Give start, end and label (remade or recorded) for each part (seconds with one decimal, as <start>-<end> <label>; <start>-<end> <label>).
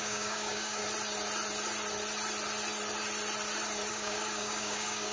0.0-0.8 remade; 0.8-3.9 recorded; 3.9-5.1 remade